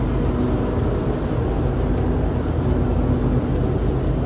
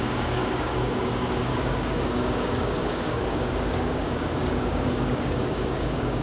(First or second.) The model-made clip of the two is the second